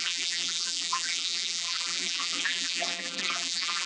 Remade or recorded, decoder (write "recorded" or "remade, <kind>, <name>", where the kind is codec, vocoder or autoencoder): remade, vocoder, BigVGAN v2